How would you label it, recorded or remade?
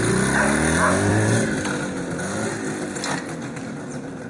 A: recorded